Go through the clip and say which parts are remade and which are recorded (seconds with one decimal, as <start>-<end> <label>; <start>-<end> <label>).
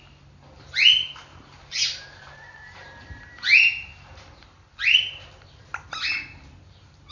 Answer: 0.0-1.3 recorded; 1.3-5.6 remade; 5.6-7.1 recorded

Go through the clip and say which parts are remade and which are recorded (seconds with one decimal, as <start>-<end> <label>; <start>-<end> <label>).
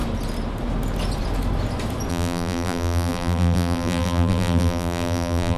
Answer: 0.0-2.1 recorded; 2.1-5.6 remade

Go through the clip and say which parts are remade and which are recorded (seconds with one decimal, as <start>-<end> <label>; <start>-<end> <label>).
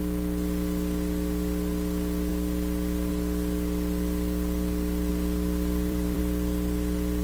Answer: 0.0-5.1 recorded; 5.1-6.2 remade; 6.2-7.2 recorded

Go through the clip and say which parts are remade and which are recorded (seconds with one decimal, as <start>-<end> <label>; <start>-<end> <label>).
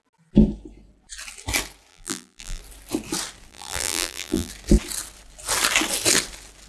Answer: 0.0-1.9 recorded; 1.9-2.6 remade; 2.6-3.5 recorded; 3.5-4.5 remade; 4.5-6.7 recorded